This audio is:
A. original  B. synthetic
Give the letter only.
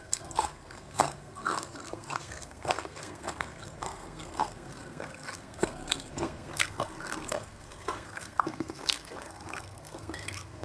B